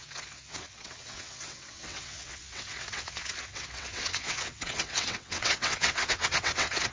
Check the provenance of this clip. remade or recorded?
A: remade